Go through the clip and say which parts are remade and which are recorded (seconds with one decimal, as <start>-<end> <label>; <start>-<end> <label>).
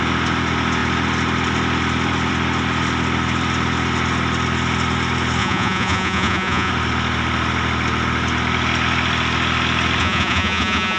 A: 0.0-5.4 recorded; 5.4-6.7 remade; 6.7-10.0 recorded; 10.0-11.0 remade